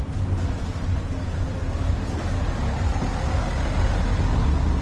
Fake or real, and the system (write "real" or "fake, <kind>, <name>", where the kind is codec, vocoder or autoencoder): real